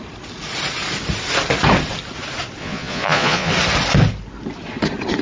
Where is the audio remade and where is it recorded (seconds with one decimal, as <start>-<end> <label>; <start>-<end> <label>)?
0.0-2.6 recorded; 2.6-3.5 remade; 3.5-5.2 recorded